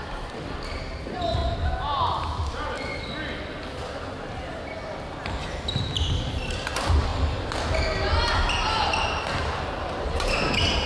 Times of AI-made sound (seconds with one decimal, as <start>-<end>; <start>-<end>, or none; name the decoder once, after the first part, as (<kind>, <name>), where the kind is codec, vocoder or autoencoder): 0.0-1.4 (vocoder, BigVGAN v2); 2.5-2.9; 6.3-7.1; 9.6-10.9